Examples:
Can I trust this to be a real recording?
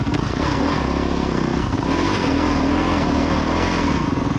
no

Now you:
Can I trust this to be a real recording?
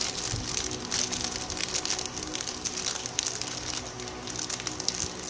yes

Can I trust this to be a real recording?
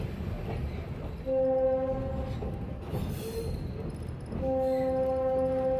yes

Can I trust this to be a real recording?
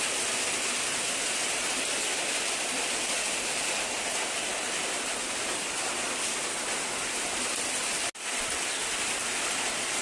yes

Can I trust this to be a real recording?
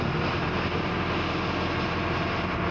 yes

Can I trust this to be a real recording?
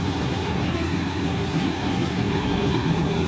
no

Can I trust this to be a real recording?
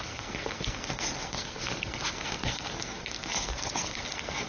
no